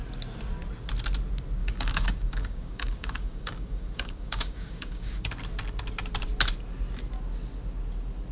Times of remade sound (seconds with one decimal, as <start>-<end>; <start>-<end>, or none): 1.6-5.3